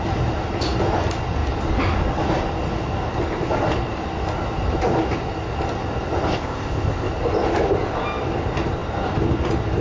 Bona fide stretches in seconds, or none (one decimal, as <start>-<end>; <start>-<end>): 0.0-6.3; 7.1-9.8